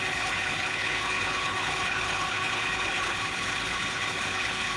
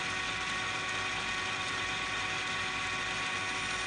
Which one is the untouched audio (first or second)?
second